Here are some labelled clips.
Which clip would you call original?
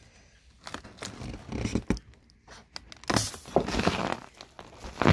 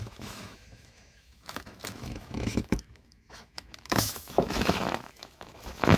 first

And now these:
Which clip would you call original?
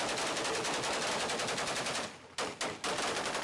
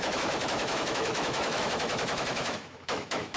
first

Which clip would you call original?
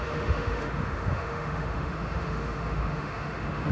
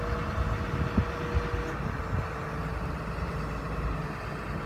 second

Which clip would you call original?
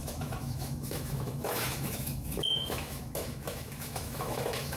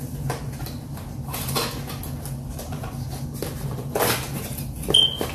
second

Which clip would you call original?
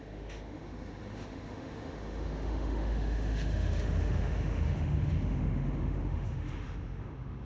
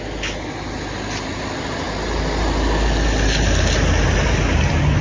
second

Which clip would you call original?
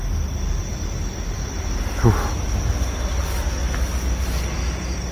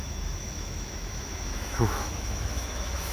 first